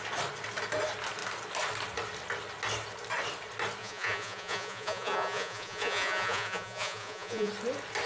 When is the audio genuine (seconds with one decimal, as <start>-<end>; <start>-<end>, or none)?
0.0-3.8; 7.5-8.1